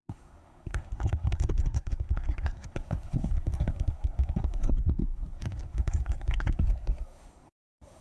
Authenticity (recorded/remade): remade